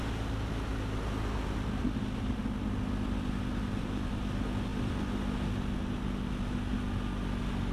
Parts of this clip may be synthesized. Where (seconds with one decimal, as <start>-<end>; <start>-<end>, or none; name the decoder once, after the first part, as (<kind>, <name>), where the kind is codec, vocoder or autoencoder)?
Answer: none